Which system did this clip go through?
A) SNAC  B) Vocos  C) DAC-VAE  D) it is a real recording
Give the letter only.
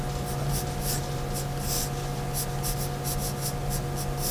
D